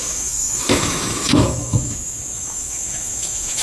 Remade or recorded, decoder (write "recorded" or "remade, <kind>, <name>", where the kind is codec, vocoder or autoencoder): remade, autoencoder, DAC-VAE